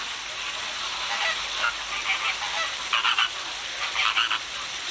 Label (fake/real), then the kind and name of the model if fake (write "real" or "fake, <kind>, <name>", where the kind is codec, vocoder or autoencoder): real